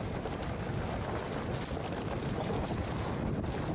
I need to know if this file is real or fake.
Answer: real